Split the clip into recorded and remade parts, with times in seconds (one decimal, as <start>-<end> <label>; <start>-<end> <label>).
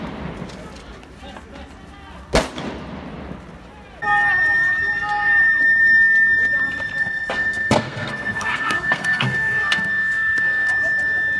0.0-7.0 recorded; 7.0-10.7 remade; 10.7-11.4 recorded